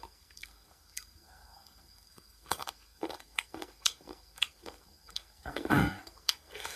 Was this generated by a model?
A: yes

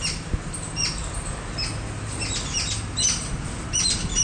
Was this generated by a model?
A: no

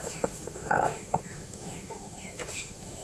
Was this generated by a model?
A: yes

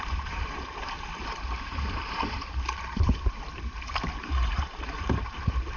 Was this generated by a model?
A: yes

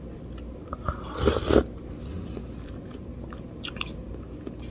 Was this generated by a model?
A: no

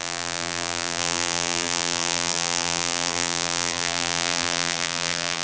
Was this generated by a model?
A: yes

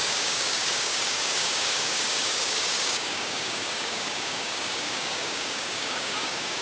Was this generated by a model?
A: yes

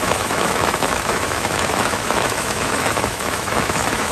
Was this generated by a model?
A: yes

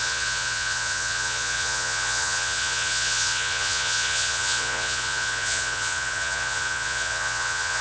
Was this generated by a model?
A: yes